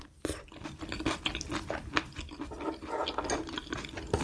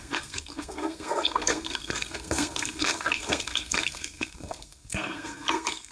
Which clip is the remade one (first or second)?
second